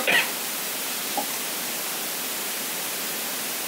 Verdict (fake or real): fake